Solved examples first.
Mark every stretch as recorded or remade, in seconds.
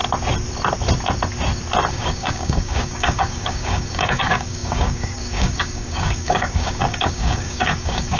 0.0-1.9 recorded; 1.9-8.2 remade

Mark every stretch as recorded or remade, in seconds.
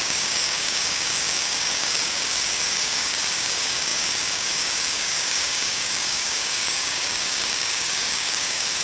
0.0-8.8 remade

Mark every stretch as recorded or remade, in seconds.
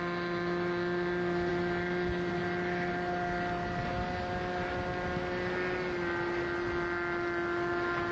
0.0-8.1 recorded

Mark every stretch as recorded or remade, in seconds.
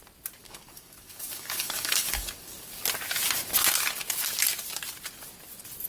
0.0-0.4 recorded; 0.4-2.8 remade; 2.8-5.9 recorded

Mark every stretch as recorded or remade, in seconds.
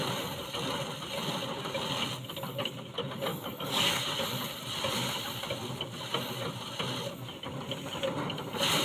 0.0-3.3 recorded; 3.3-4.0 remade; 4.0-8.8 recorded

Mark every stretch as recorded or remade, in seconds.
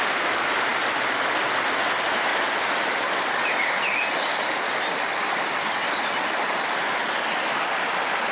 0.0-8.3 recorded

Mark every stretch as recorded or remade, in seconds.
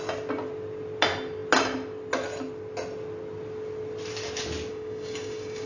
0.0-4.7 recorded; 4.7-5.7 remade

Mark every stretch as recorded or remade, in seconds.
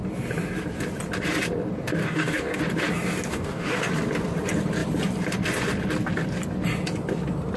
0.0-2.0 recorded; 2.0-2.6 remade; 2.6-3.3 recorded; 3.3-3.9 remade; 3.9-7.6 recorded